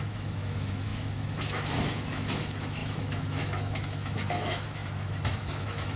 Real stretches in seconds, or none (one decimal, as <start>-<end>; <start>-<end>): none